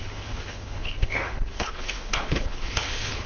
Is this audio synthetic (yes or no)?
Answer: yes